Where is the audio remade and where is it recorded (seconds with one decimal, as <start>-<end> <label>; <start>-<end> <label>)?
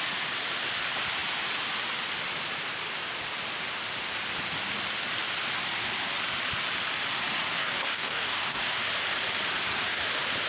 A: 0.0-7.6 recorded; 7.6-8.6 remade; 8.6-10.5 recorded